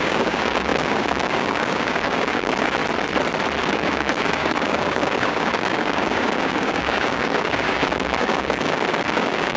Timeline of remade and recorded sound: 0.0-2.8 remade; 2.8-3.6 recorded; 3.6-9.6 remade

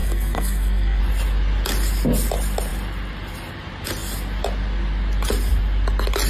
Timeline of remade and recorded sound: 0.0-1.0 remade; 1.0-6.3 recorded

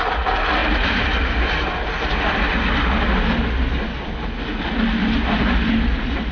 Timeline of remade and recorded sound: 0.0-6.3 recorded

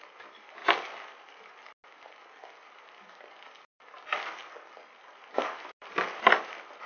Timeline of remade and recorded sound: 0.0-0.6 remade; 0.6-2.8 recorded; 2.8-4.4 remade; 4.4-5.3 recorded; 5.3-6.9 remade

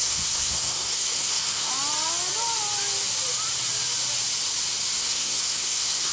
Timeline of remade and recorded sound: 0.0-1.7 remade; 1.7-5.0 recorded; 5.0-6.1 remade

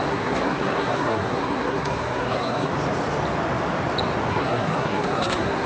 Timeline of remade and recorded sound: 0.0-2.7 remade; 2.7-4.3 recorded; 4.3-5.7 remade